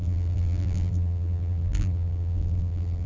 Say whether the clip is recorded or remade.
remade